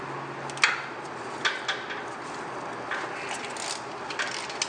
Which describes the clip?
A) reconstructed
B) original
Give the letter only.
B